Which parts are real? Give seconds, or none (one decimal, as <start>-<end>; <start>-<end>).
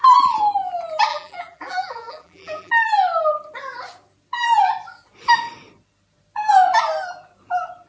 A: 0.0-1.1; 2.7-7.9